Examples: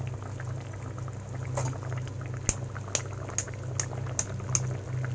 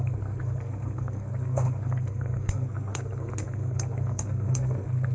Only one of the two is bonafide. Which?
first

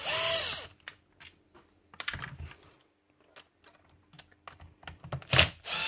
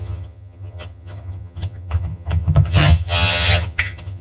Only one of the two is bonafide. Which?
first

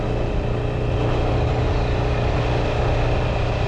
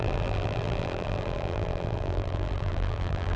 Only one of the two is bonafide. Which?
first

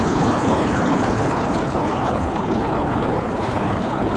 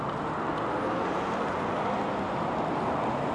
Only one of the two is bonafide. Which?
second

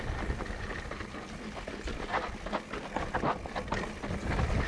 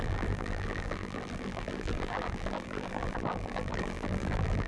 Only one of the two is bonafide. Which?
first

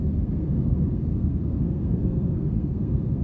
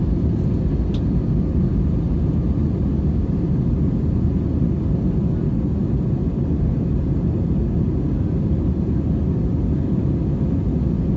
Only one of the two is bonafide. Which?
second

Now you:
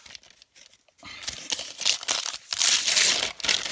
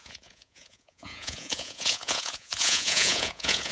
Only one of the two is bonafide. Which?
first